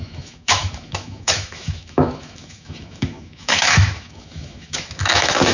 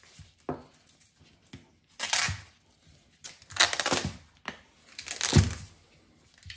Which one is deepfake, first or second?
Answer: first